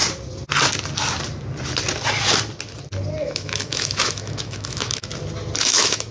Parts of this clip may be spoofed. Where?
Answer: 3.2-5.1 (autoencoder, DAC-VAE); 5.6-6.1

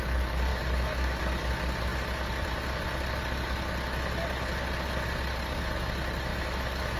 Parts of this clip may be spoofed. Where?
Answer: 0.5-1.2 (autoencoder, DAC-VAE); 6.3-7.0